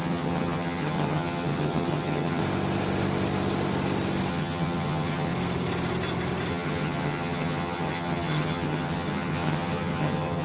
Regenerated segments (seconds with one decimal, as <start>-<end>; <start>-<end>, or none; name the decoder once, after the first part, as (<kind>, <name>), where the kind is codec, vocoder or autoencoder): 0.0-2.4 (vocoder, HiFi-GAN); 4.3-5.3; 6.5-10.4